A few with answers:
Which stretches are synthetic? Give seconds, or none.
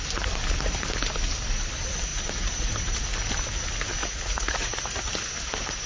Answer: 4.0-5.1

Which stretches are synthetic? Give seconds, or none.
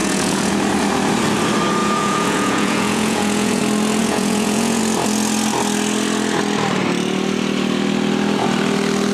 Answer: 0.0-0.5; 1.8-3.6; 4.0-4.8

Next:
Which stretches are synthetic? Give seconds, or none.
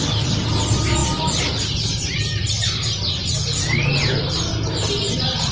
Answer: none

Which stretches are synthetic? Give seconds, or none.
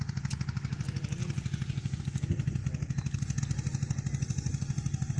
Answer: 1.2-2.0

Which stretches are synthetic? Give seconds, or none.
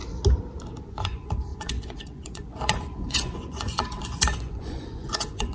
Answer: 0.8-5.5